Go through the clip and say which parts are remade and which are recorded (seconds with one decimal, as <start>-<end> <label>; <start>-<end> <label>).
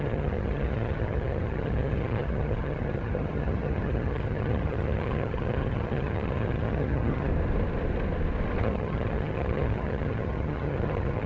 0.0-7.3 remade; 7.3-8.6 recorded; 8.6-11.3 remade